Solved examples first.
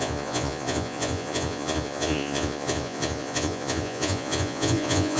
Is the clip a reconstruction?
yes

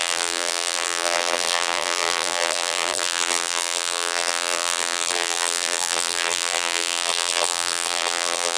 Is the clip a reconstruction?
yes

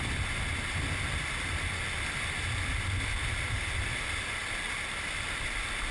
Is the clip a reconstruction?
no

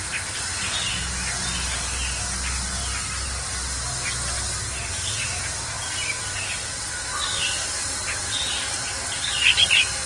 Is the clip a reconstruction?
no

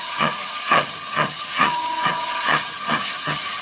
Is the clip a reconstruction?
yes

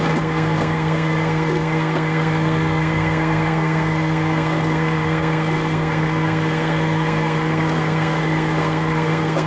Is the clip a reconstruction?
yes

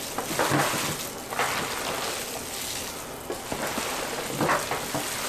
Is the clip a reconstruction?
no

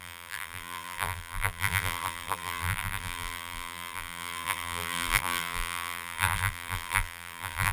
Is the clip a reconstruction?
yes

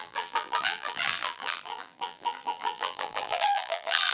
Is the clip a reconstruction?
yes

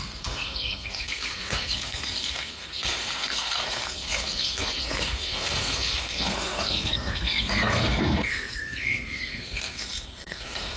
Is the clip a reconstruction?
yes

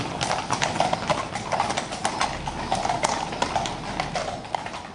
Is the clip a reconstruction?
no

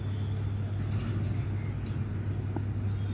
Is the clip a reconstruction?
no